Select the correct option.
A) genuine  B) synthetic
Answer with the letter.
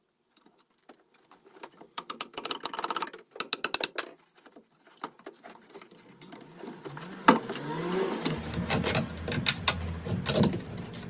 A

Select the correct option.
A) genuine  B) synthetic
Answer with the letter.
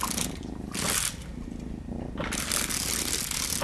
A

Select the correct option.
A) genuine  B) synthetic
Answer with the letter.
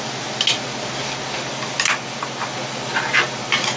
A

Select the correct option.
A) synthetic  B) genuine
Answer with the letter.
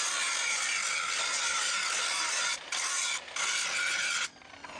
B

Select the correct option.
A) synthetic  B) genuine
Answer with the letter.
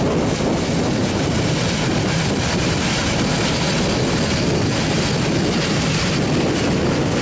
B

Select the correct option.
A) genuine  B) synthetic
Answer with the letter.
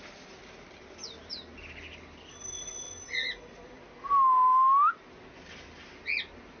A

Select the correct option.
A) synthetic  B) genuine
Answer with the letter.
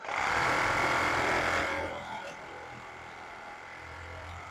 A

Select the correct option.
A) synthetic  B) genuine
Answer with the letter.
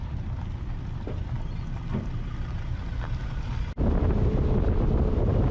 B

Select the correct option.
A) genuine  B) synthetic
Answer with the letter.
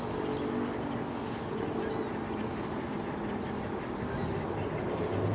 A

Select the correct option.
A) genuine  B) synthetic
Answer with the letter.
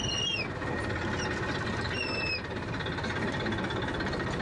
A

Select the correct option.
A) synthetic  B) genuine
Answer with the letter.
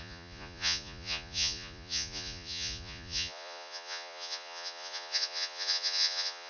A